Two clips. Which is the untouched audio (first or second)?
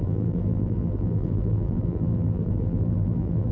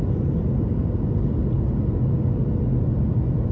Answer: second